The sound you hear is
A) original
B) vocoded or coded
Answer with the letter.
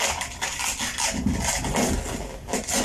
A